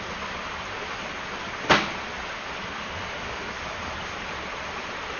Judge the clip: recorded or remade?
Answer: recorded